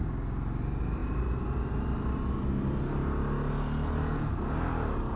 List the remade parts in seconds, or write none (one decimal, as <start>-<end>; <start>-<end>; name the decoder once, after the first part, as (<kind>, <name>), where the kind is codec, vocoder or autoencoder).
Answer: none